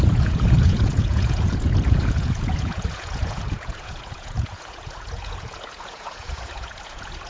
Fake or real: fake